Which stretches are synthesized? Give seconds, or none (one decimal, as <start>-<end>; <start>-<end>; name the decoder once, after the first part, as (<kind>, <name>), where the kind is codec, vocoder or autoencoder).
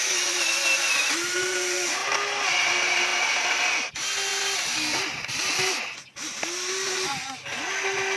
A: none